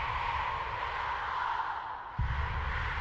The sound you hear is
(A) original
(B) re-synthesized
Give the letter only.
A